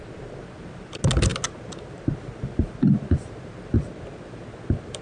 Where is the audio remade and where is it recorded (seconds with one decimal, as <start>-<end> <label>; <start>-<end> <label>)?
0.0-5.0 recorded